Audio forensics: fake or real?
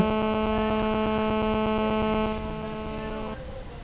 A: real